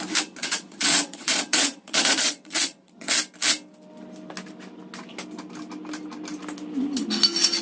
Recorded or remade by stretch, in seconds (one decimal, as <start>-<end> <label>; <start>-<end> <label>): 0.0-0.4 recorded; 0.4-3.1 remade; 3.1-7.6 recorded